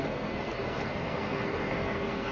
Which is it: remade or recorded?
remade